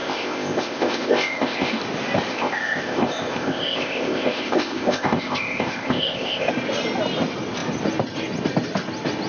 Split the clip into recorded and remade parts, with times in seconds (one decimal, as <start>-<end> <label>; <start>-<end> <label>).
0.0-1.8 remade; 1.8-2.3 recorded; 2.3-6.5 remade; 6.5-9.3 recorded